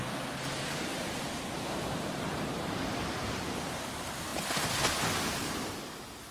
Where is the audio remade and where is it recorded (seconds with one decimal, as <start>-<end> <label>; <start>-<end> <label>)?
0.0-0.9 recorded; 0.9-3.1 remade; 3.1-6.3 recorded